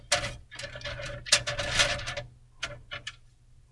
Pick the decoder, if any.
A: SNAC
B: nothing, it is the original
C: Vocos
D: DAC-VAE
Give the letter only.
B